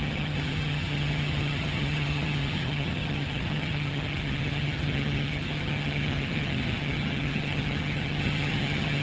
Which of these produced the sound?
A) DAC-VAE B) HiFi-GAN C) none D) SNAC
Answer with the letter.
B